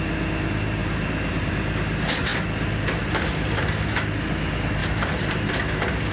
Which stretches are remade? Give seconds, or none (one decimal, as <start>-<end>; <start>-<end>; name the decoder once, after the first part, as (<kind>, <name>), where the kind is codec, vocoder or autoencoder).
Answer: 0.8-1.5 (vocoder, BigVGAN v2); 4.8-5.5